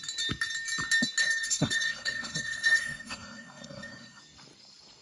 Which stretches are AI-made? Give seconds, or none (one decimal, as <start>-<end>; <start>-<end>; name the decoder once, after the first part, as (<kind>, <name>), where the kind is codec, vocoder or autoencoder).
1.2-4.2 (codec, SNAC)